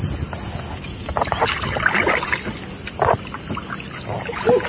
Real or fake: real